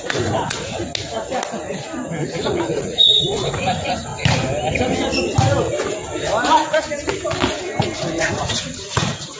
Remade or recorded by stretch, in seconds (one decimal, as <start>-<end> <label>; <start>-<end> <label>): 0.0-0.8 remade; 0.8-2.2 recorded; 2.2-4.1 remade; 4.1-8.2 recorded; 8.2-9.4 remade